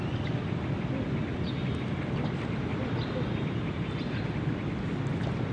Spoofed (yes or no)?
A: no